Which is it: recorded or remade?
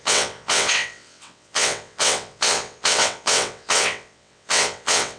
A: remade